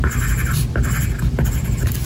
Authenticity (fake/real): real